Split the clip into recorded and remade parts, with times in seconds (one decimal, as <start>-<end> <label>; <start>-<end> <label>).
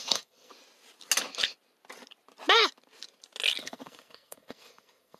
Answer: 0.0-0.5 remade; 0.5-3.6 recorded; 3.6-5.2 remade